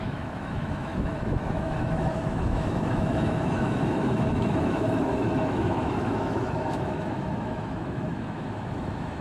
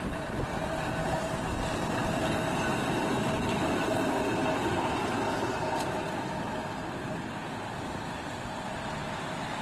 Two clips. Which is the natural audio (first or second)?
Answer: second